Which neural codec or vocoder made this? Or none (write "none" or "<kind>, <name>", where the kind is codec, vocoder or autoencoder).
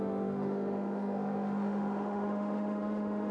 autoencoder, DAC-VAE